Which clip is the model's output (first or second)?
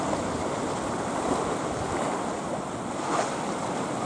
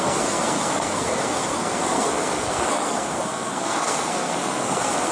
second